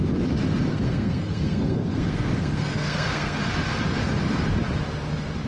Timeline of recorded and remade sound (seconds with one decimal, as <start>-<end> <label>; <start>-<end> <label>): 0.0-0.7 recorded; 0.7-3.4 remade; 3.4-5.5 recorded